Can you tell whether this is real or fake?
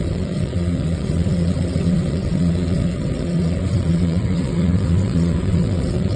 fake